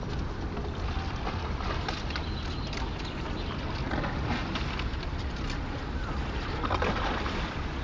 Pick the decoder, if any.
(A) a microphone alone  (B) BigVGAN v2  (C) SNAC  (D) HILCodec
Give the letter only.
A